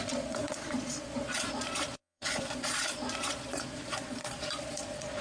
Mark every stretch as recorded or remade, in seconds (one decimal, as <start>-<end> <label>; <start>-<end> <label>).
0.0-5.2 remade